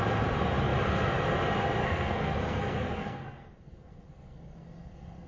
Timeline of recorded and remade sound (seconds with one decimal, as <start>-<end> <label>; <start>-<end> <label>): 0.0-1.8 recorded; 1.8-5.3 remade